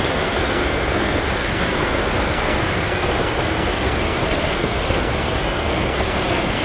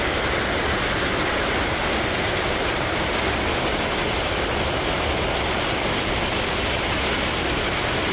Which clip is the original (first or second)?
second